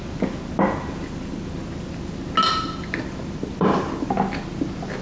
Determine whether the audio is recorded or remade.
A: recorded